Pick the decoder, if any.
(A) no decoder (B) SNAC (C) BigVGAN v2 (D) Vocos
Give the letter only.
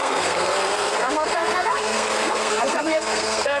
B